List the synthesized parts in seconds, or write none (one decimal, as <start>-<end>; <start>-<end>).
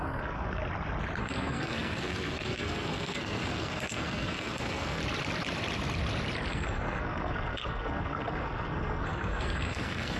0.0-0.6; 1.2-5.0; 6.5-10.2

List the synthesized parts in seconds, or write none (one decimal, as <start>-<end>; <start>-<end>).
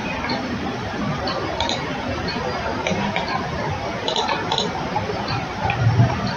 0.0-6.4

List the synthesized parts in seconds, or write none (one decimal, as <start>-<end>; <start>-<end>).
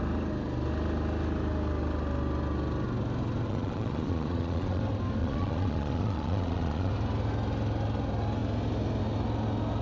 3.5-4.8; 5.2-6.9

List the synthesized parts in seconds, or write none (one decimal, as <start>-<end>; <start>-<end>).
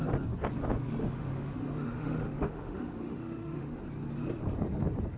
1.0-3.8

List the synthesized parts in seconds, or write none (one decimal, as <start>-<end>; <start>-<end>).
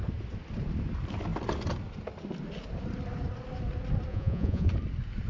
4.1-4.7